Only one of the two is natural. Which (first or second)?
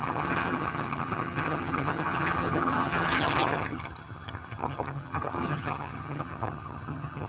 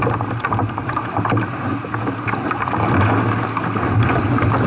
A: second